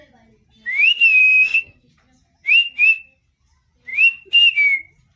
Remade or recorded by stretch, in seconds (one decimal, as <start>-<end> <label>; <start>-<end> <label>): 0.0-1.2 recorded; 1.2-1.9 remade; 1.9-5.2 recorded